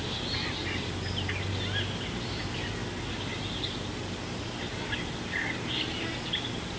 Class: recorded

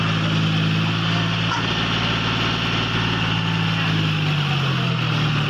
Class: recorded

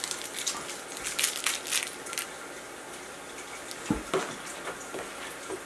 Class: recorded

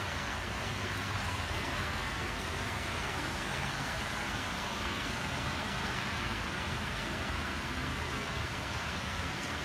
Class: remade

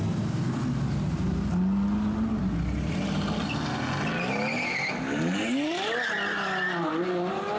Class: recorded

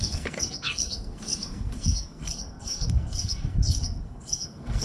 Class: remade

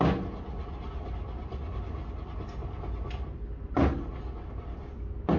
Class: recorded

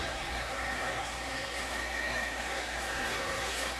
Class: remade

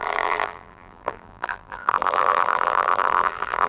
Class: remade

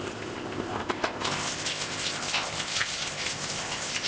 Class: remade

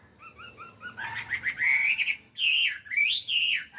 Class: recorded